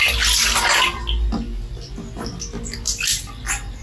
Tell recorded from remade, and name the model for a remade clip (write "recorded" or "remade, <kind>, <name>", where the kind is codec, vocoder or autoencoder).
recorded